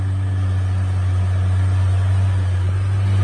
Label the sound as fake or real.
real